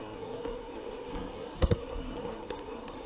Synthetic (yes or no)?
yes